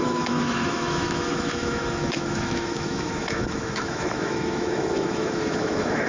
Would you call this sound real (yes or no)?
no